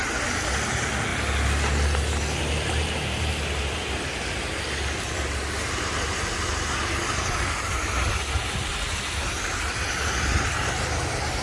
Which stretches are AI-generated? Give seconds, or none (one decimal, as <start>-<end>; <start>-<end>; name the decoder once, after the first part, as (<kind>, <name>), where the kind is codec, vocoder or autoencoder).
none